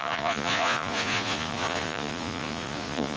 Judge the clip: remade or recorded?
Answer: remade